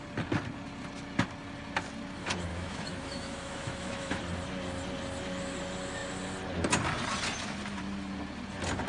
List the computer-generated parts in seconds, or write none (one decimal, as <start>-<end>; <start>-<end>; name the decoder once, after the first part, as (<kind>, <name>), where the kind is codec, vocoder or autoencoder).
2.5-4.2 (autoencoder, DAC-VAE)